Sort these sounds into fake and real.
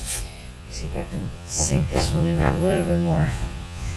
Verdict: fake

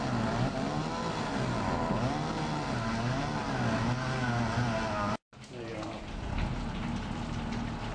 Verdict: real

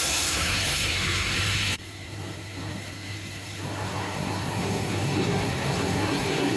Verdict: fake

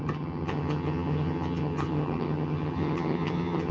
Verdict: fake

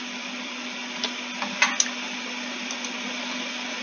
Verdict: real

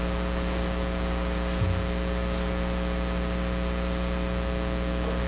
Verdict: real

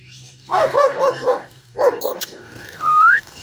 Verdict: fake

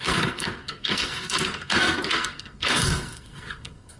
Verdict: fake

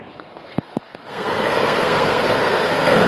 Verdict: fake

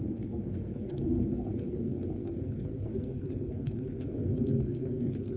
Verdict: fake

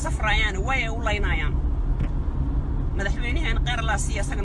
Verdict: real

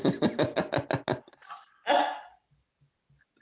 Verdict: real